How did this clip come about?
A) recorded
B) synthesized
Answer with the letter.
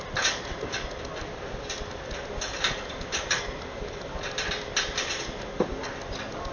A